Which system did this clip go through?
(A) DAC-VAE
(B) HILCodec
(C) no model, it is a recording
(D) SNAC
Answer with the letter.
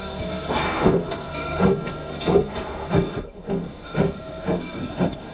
D